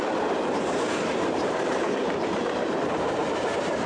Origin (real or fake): fake